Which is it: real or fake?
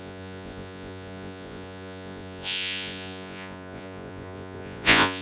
fake